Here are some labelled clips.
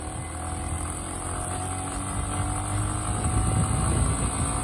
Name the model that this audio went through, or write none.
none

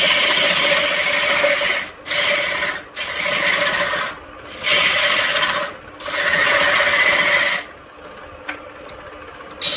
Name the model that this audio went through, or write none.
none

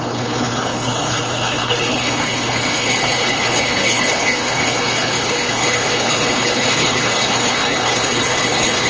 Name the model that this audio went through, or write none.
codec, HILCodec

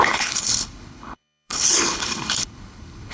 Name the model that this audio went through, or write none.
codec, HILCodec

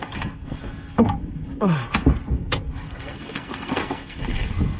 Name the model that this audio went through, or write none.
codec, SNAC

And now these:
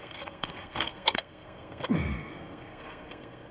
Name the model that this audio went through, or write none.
codec, SNAC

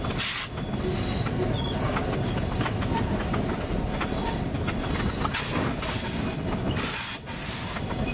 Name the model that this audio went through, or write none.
none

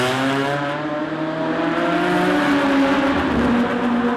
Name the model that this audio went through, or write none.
none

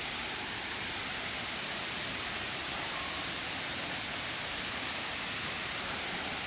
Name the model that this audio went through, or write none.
vocoder, BigVGAN v2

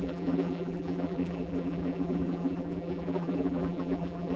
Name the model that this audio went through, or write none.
vocoder, BigVGAN v2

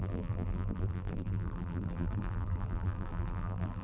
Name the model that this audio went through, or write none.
vocoder, BigVGAN v2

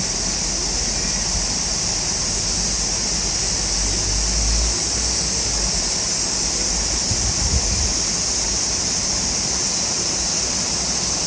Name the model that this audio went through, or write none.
none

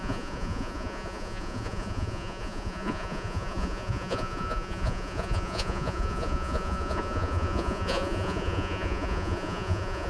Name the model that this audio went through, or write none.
vocoder, Vocos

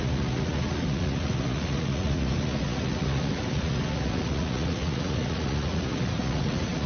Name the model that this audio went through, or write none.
vocoder, Vocos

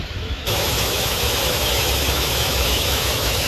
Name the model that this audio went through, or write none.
autoencoder, DAC-VAE